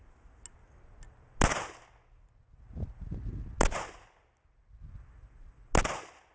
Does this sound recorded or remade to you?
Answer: recorded